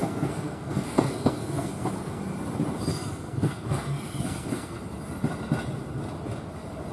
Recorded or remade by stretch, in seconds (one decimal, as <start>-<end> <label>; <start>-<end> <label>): 0.0-2.2 remade; 2.2-2.9 recorded; 2.9-4.8 remade; 4.8-6.9 recorded